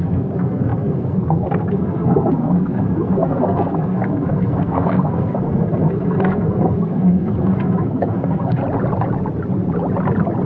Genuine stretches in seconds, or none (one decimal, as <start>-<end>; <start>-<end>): 8.6-10.5